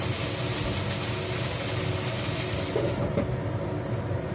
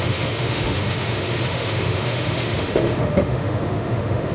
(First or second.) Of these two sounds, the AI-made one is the second